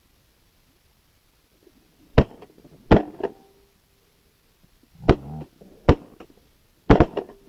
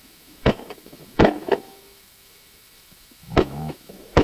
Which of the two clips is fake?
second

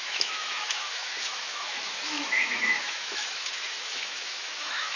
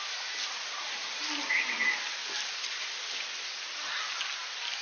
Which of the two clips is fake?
first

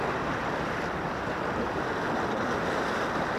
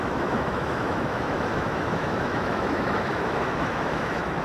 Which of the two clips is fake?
second